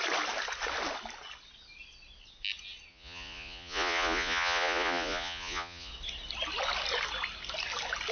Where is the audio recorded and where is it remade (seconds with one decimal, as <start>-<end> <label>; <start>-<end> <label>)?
0.0-2.9 recorded; 2.9-5.9 remade; 5.9-8.1 recorded